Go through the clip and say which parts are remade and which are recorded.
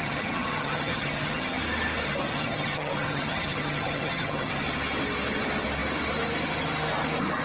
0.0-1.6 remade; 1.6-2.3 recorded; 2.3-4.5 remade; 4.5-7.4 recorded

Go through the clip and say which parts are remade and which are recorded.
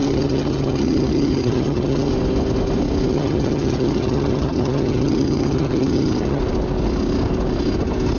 0.0-2.1 remade; 2.1-3.1 recorded; 3.1-6.4 remade; 6.4-8.2 recorded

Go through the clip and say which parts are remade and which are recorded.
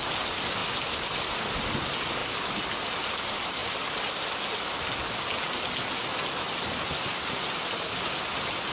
0.0-8.7 recorded